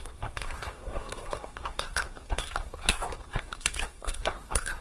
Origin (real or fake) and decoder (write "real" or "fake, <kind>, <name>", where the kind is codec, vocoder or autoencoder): fake, codec, SNAC